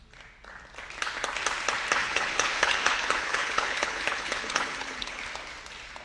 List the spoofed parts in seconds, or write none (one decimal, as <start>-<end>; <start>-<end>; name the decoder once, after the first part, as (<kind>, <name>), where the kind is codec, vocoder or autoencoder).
2.0-5.2 (codec, HILCodec)